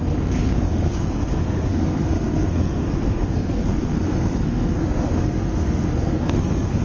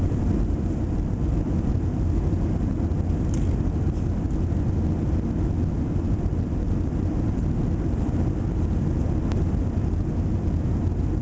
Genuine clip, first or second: second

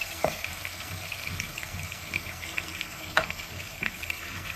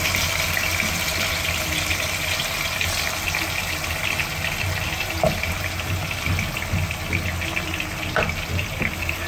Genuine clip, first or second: second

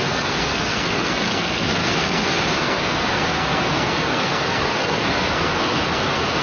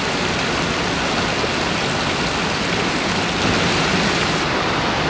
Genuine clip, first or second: second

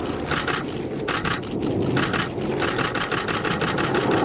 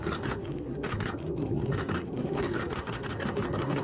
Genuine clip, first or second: first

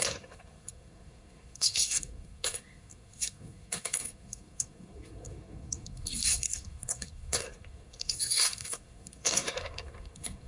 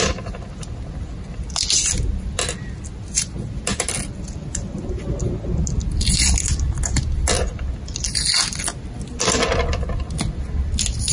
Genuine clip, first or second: second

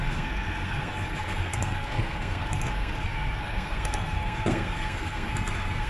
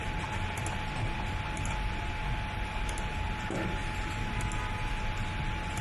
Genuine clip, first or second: second